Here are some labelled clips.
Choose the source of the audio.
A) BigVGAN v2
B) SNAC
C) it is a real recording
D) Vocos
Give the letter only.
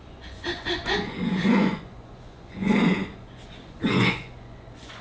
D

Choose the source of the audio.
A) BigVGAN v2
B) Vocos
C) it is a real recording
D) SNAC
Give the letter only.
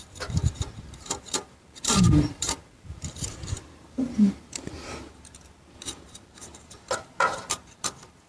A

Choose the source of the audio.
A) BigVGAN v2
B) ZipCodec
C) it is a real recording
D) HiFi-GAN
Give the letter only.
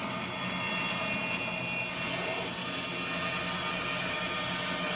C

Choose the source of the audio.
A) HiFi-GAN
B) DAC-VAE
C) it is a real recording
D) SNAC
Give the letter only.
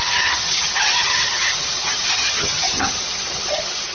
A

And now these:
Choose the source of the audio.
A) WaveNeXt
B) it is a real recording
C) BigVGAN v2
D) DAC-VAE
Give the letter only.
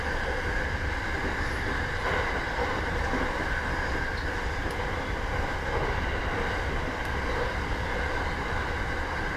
B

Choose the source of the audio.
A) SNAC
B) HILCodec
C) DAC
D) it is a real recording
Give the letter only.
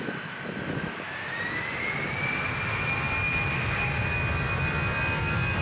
D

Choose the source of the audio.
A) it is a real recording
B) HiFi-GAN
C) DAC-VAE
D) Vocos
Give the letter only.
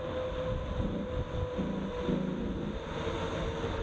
A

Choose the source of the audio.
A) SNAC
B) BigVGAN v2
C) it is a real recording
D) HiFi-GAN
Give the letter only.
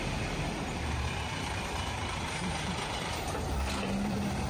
B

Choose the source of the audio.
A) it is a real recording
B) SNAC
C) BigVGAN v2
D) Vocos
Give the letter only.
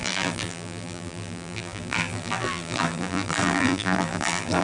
C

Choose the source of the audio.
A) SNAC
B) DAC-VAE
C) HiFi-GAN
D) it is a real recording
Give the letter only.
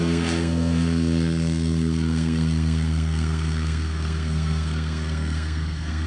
A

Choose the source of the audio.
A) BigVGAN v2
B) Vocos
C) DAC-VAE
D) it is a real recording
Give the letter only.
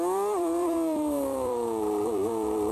A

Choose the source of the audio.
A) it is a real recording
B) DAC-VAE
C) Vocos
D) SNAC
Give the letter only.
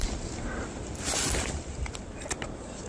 A